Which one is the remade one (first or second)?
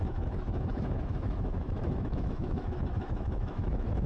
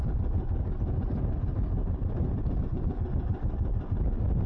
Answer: first